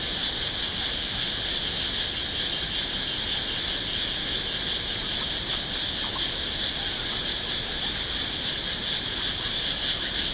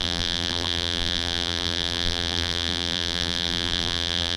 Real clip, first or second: first